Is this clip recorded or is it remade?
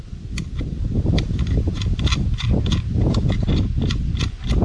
recorded